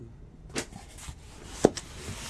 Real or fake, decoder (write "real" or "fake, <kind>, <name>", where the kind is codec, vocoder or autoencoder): real